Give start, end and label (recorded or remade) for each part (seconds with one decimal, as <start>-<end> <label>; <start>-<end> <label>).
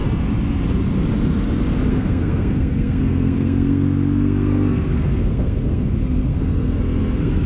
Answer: 0.0-1.9 recorded; 1.9-7.5 remade